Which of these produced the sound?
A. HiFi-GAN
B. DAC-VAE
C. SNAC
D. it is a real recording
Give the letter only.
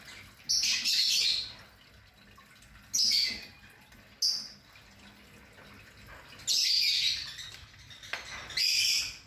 D